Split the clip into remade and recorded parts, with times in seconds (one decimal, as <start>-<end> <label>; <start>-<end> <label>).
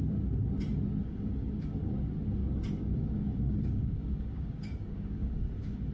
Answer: 0.0-1.0 recorded; 1.0-1.9 remade; 1.9-2.4 recorded; 2.4-5.9 remade